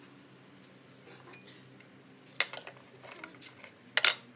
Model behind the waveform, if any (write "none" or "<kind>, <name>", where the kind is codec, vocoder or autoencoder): none